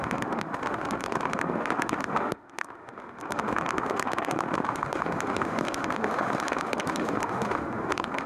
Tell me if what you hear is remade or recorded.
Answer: remade